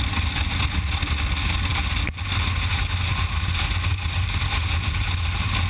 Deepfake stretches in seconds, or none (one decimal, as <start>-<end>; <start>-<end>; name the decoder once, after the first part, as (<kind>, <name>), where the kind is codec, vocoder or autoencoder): none